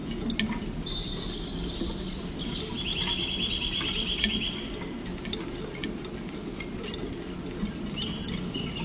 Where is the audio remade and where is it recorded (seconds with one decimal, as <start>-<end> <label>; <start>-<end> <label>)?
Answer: 0.0-8.8 recorded